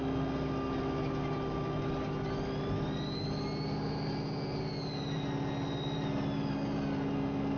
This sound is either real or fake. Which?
real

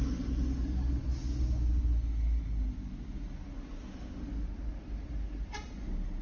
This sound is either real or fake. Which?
real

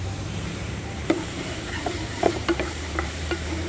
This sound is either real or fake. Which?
fake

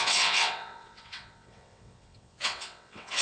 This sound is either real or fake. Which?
fake